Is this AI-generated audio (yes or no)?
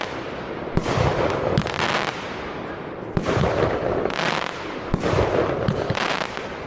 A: no